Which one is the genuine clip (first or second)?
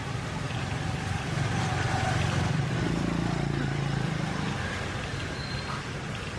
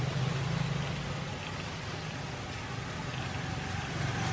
second